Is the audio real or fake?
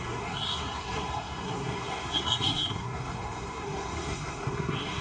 fake